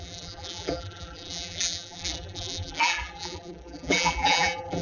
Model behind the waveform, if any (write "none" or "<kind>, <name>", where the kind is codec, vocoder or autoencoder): vocoder, BigVGAN v2